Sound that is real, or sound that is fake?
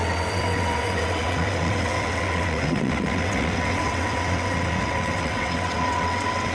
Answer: fake